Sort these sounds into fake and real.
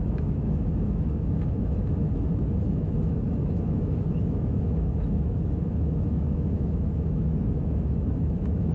fake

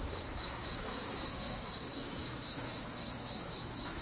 fake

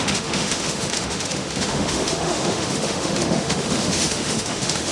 fake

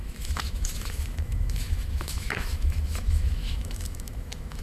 fake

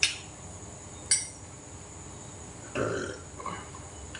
real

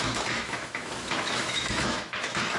fake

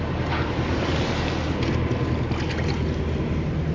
real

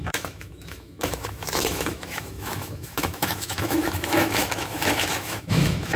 fake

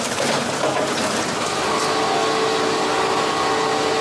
real